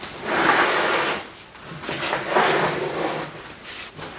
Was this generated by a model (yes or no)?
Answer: no